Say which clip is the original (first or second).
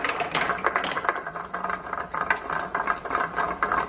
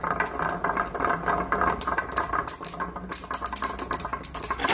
second